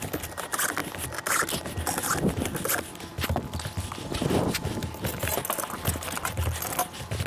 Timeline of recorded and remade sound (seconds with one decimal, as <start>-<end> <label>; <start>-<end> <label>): 0.0-7.3 recorded